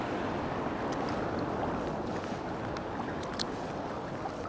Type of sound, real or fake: real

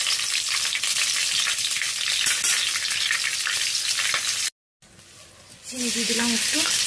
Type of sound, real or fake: real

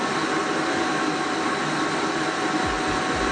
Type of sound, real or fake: real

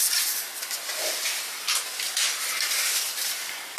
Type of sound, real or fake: real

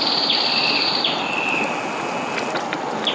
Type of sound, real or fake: real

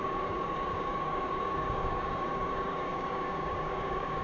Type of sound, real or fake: fake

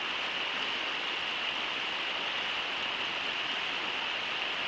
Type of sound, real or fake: real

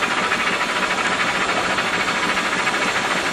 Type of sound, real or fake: real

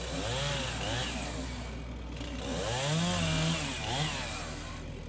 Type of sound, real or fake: real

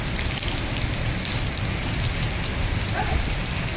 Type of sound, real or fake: real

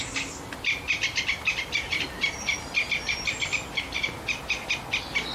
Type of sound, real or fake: real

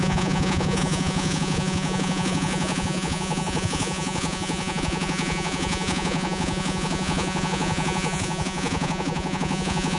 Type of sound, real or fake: fake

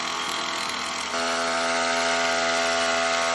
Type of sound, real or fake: real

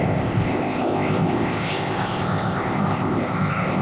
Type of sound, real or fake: fake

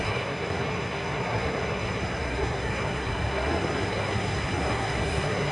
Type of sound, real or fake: fake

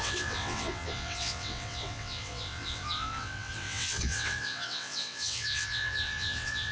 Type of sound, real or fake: fake